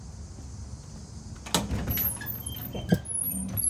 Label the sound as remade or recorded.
recorded